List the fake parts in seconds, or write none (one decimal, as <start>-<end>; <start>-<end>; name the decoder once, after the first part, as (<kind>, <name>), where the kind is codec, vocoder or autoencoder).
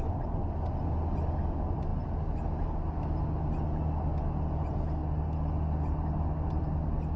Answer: none